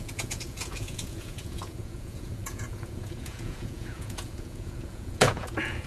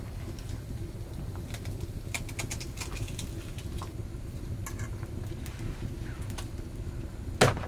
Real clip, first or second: second